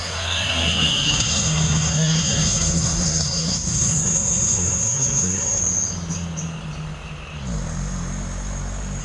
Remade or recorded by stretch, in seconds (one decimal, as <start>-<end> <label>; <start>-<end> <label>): 0.0-5.6 remade; 5.6-9.0 recorded